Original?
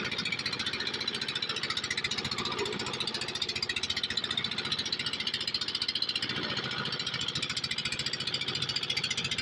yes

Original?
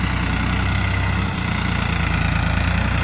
yes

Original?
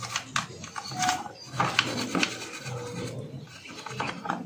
yes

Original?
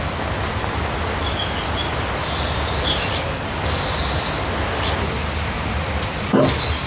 yes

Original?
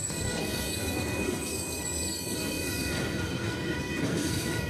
no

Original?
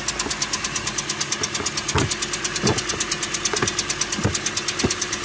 yes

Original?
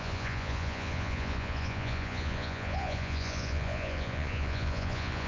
no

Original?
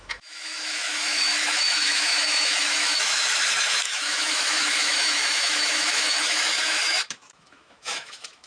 no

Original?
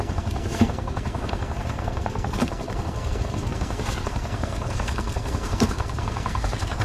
no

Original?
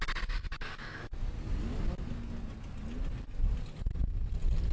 yes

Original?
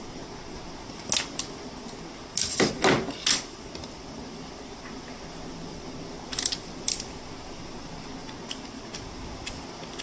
yes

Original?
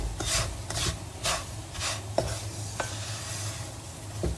yes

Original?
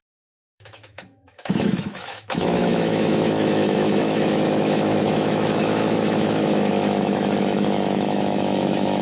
no